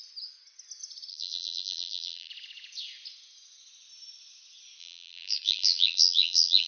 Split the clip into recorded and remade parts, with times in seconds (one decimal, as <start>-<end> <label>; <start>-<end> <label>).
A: 0.0-1.1 recorded; 1.1-2.3 remade; 2.3-4.8 recorded; 4.8-6.7 remade